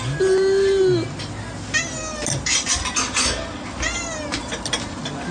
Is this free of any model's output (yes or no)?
yes